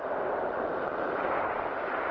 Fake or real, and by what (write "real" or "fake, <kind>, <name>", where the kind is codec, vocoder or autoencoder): real